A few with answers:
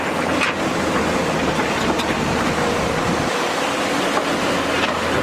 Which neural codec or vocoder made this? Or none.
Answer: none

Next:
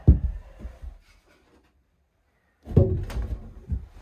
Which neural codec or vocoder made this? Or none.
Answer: none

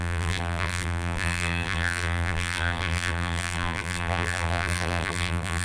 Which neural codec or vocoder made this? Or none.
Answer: vocoder, BigVGAN v2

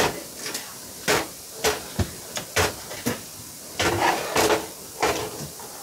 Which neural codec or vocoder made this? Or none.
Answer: vocoder, BigVGAN v2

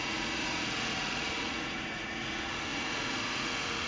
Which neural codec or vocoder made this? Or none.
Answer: vocoder, Vocos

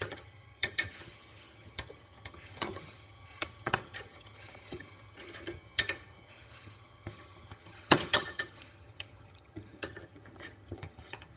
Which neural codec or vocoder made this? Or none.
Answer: vocoder, HiFi-GAN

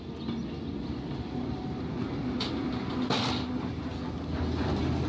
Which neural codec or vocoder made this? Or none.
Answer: none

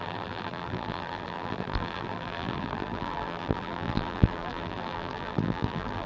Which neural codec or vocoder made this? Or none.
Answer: vocoder, BigVGAN v2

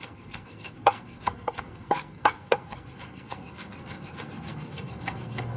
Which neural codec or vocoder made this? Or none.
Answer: codec, SNAC